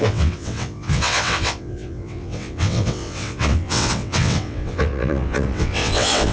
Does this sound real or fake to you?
fake